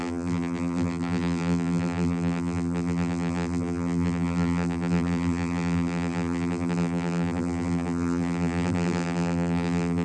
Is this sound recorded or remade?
remade